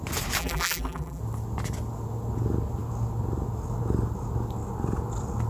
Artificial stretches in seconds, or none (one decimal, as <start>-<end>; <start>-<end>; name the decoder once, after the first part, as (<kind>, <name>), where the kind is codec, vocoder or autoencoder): 0.4-1.2 (vocoder, BigVGAN v2)